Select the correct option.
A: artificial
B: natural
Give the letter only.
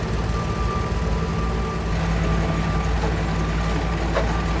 B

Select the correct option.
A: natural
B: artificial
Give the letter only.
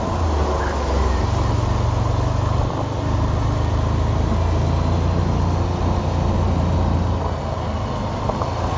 A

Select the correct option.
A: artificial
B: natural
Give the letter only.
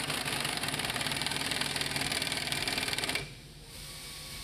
A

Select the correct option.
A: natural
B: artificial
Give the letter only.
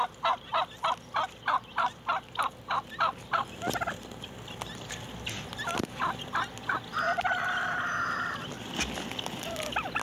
A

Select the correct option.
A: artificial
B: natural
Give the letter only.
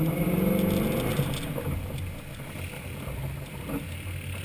B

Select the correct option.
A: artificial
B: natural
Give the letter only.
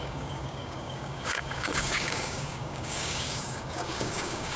A